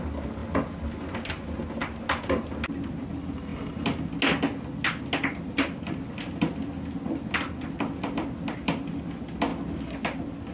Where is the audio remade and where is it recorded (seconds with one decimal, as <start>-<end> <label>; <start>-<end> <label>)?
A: 0.0-10.5 recorded